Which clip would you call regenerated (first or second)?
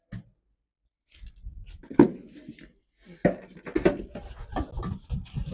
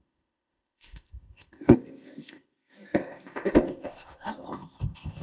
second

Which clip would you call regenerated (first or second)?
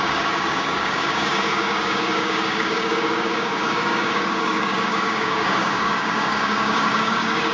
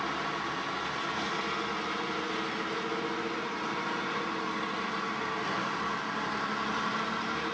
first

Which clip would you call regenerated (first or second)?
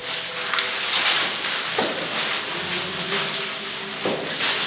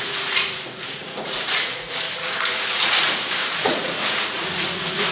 second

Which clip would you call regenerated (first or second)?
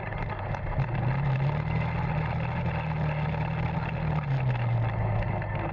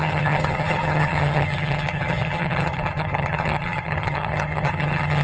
second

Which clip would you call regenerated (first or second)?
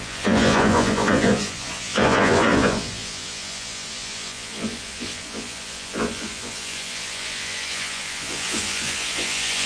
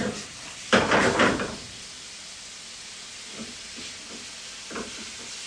first